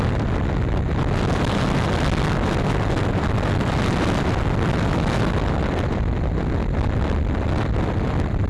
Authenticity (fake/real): real